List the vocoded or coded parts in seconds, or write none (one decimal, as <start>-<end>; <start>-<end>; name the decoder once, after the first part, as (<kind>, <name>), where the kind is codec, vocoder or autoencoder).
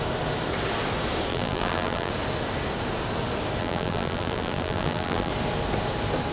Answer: 1.3-2.1 (vocoder, BigVGAN v2); 3.6-5.3